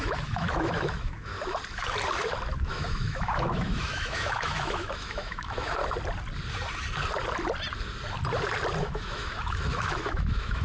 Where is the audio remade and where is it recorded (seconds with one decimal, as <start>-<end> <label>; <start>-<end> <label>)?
0.0-1.3 remade; 1.3-2.6 recorded; 2.6-5.8 remade; 5.8-8.8 recorded; 8.8-10.6 remade